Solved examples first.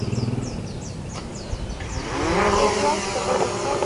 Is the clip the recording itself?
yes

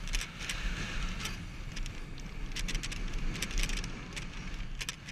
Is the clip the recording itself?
yes